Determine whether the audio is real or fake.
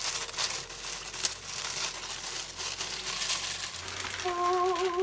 real